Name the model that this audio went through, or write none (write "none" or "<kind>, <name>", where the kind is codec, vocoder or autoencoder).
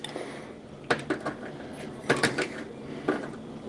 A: none